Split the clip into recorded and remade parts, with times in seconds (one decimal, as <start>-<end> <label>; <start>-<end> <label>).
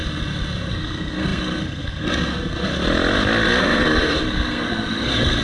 0.0-0.7 recorded; 0.7-2.7 remade; 2.7-3.6 recorded; 3.6-5.4 remade